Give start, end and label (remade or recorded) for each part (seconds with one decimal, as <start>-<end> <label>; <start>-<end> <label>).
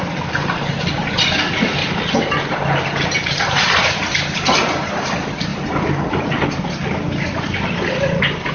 0.0-8.5 recorded